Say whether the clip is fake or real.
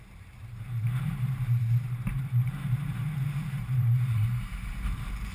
fake